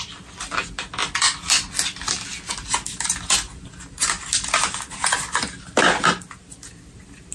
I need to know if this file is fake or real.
real